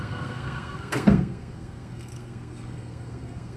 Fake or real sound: fake